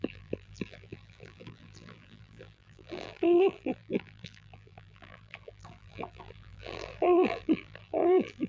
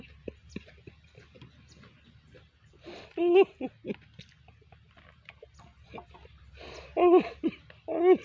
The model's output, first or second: first